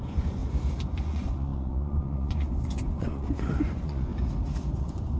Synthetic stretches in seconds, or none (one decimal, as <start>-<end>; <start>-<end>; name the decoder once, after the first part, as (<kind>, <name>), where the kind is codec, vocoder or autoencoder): 0.0-0.4 (vocoder, Vocos); 1.0-4.1; 4.8-5.2